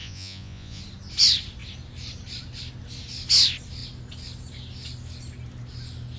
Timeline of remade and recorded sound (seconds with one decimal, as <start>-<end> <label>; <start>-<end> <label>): 0.0-0.8 remade; 0.8-6.2 recorded